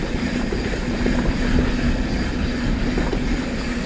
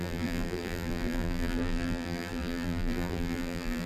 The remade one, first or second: second